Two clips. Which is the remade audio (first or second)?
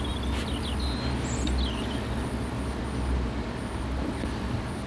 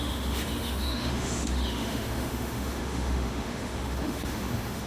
second